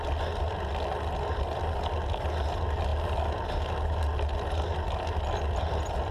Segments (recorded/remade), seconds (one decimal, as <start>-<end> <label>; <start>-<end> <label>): 0.0-6.1 recorded

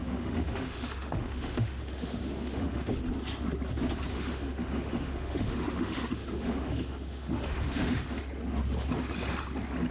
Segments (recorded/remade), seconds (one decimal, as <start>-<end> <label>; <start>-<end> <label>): 0.0-2.9 remade; 2.9-4.1 recorded; 4.1-8.2 remade; 8.2-9.9 recorded

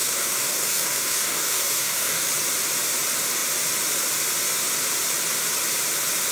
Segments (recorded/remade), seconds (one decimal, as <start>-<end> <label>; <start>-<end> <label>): 0.0-2.3 remade; 2.3-6.3 recorded